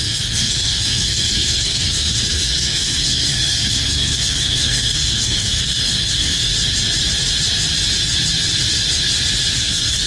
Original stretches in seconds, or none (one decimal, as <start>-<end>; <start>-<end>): 6.5-9.6